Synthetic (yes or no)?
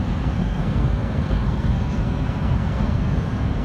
yes